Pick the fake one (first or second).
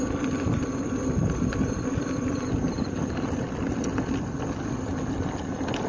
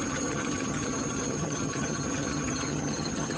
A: second